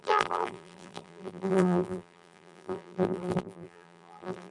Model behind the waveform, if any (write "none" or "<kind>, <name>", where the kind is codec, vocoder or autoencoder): vocoder, BigVGAN v2